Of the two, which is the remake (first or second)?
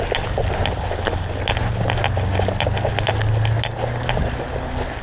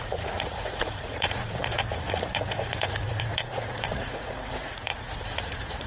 second